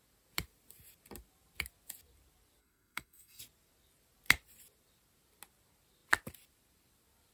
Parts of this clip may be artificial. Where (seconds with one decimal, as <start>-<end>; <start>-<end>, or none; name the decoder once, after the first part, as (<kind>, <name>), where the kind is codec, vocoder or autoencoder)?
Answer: 2.6-3.4 (codec, SNAC)